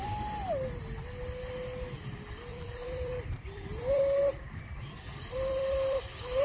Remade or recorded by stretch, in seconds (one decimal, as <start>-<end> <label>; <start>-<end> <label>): 0.0-2.5 recorded; 2.5-6.4 remade